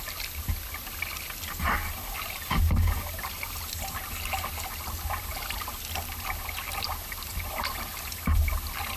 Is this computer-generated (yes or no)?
no